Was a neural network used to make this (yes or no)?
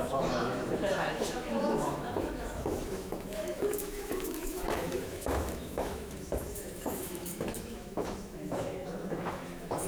yes